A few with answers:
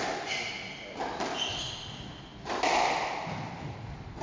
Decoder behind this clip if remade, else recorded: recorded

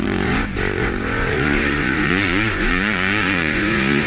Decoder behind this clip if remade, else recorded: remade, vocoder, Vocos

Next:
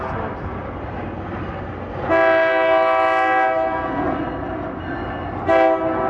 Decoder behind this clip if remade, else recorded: recorded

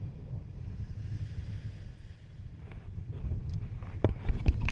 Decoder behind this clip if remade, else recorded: recorded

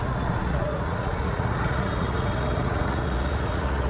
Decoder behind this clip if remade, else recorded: remade, vocoder, Vocos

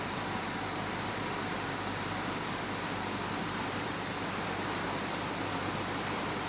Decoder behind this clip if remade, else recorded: remade, vocoder, BigVGAN v2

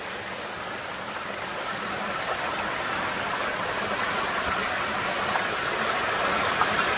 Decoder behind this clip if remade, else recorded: recorded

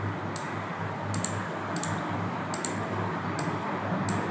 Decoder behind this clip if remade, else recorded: recorded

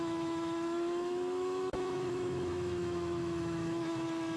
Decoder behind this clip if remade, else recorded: remade, autoencoder, DAC-VAE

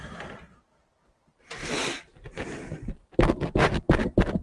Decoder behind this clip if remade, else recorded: recorded